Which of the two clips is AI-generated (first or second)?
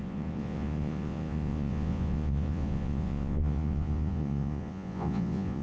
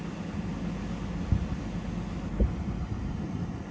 first